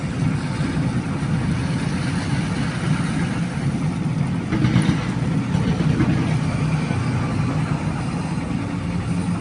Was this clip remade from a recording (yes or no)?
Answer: no